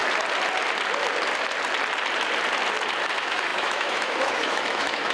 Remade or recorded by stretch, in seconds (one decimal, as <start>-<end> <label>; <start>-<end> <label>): 0.0-3.1 recorded; 3.1-5.1 remade